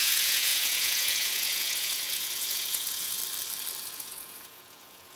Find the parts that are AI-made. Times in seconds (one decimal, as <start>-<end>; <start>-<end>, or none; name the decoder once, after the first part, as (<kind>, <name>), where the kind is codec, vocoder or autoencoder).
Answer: 0.0-3.2 (vocoder, Vocos); 3.8-5.2